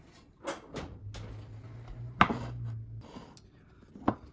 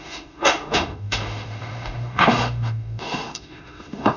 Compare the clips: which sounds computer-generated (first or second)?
second